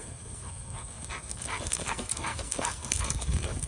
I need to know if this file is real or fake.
fake